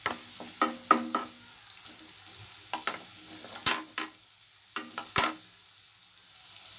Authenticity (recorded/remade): recorded